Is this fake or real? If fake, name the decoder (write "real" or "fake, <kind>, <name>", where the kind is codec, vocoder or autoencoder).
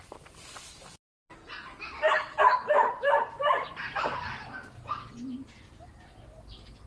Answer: real